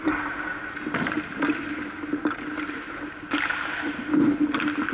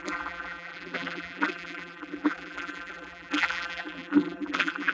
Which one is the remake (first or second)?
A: second